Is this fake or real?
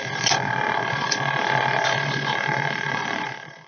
fake